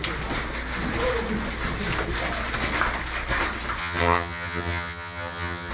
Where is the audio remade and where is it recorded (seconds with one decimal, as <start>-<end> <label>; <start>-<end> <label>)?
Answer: 0.0-3.8 recorded; 3.8-5.7 remade